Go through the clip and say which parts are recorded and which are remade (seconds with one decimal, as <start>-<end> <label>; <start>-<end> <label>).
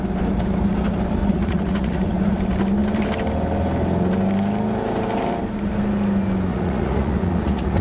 0.0-1.2 recorded; 1.2-2.4 remade; 2.4-6.5 recorded; 6.5-7.8 remade